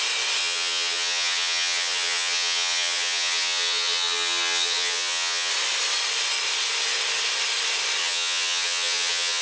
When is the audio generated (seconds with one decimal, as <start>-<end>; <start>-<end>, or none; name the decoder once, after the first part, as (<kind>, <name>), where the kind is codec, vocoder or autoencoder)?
0.4-5.5 (vocoder, HiFi-GAN); 8.0-9.4